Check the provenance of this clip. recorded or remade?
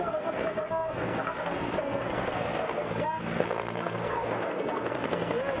remade